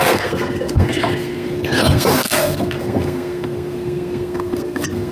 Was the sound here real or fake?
fake